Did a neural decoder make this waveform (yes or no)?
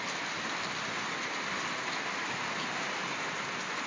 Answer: no